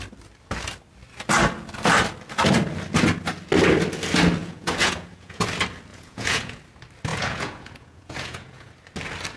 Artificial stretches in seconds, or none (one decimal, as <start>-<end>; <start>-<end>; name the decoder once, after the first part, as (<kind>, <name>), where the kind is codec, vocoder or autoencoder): 4.4-5.4 (vocoder, Vocos); 5.9-6.6; 7.1-8.7